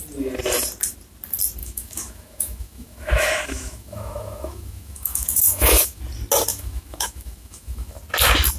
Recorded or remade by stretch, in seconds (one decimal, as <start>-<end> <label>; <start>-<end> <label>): 0.0-1.6 recorded; 1.6-6.0 remade; 6.0-6.5 recorded; 6.5-8.0 remade; 8.0-8.6 recorded